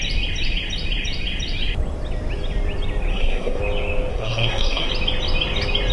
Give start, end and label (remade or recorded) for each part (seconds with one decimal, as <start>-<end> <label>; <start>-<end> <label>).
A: 0.0-3.1 recorded; 3.1-3.6 remade; 3.6-4.1 recorded; 4.1-4.9 remade; 4.9-5.9 recorded